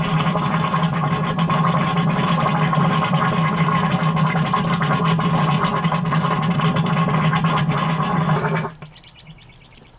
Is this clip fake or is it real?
real